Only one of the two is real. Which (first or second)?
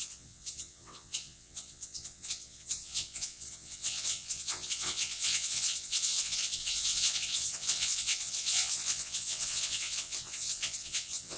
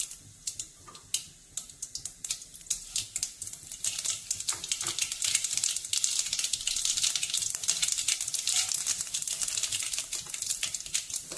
second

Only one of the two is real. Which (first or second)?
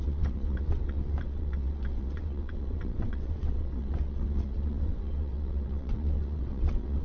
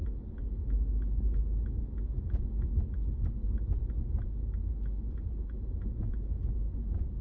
second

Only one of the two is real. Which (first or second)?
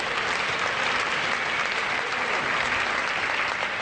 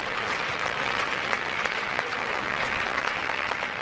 first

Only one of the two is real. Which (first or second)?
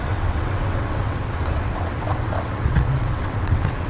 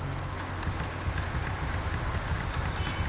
second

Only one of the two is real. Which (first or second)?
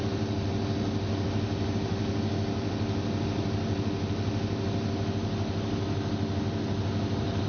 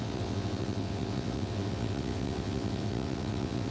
first